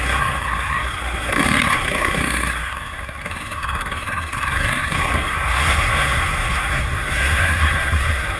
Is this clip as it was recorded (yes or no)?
no